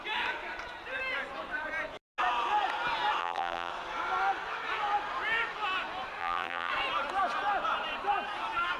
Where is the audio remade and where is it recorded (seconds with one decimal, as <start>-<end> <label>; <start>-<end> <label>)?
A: 0.0-3.2 recorded; 3.2-3.7 remade; 3.7-6.2 recorded; 6.2-6.7 remade; 6.7-8.8 recorded